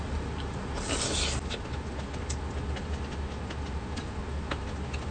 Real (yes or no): yes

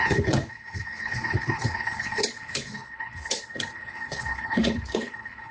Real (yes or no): no